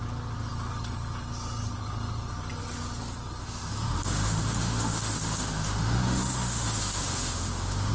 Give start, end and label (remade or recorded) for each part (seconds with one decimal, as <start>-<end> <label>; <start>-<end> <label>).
0.0-3.4 recorded; 3.4-7.9 remade